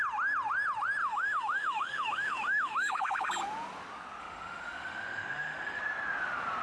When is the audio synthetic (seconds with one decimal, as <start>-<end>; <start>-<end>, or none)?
1.0-3.3; 4.2-5.8